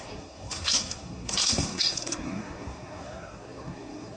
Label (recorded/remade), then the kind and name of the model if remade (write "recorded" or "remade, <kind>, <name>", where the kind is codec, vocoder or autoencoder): remade, codec, SNAC